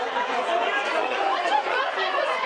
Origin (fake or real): fake